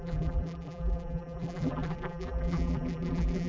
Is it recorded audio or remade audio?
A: remade